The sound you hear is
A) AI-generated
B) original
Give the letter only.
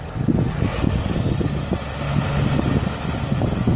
B